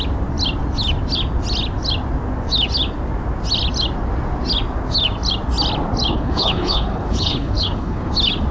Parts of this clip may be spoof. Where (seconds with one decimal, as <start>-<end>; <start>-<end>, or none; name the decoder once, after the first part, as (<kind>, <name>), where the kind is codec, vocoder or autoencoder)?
6.1-8.1 (codec, HILCodec)